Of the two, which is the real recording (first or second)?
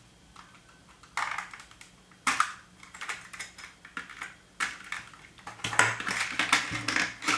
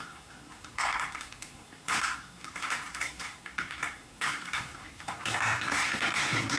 first